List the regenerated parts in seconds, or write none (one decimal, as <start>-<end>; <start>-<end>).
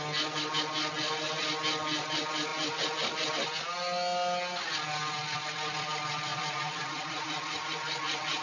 6.3-8.4